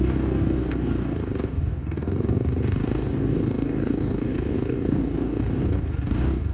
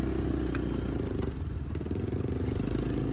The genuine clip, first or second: second